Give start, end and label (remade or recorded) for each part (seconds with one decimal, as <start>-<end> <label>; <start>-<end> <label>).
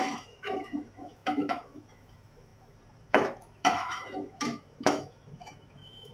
0.0-6.1 remade